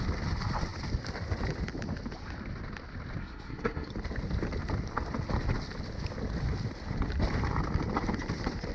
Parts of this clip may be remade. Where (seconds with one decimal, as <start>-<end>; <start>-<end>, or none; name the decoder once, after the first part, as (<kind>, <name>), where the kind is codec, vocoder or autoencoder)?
3.2-3.9 (codec, SNAC)